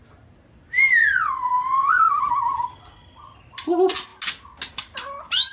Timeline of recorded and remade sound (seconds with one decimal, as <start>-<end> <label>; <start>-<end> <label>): 0.0-1.0 recorded; 1.0-2.2 remade; 2.2-5.5 recorded